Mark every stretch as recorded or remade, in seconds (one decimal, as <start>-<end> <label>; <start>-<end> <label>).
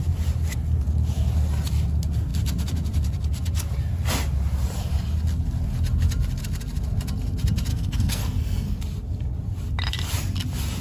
0.0-7.7 recorded; 7.7-8.8 remade; 8.8-10.8 recorded